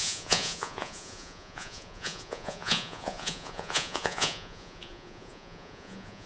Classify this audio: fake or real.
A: fake